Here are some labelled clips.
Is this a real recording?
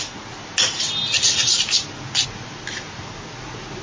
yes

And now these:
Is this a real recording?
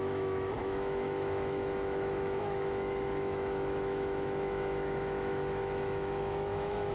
no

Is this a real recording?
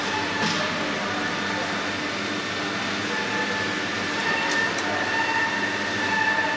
yes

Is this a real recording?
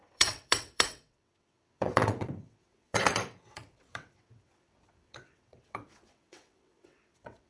no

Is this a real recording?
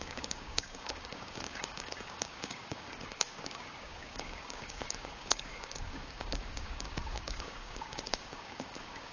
no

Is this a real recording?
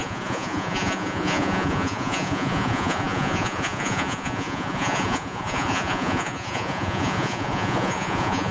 no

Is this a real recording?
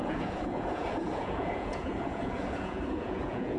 no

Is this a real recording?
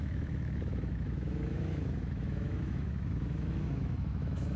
no